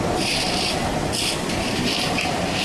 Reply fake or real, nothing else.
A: real